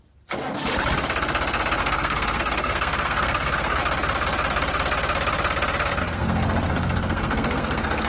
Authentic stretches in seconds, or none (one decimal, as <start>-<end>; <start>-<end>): 0.0-1.8; 3.8-6.0